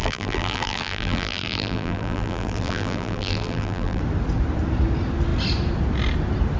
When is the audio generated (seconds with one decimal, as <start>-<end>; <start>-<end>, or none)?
0.0-4.0